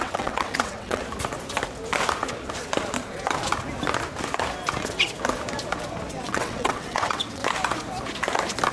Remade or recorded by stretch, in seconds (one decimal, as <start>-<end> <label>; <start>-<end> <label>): 0.0-1.0 remade; 1.0-6.1 recorded; 6.1-7.4 remade; 7.4-8.7 recorded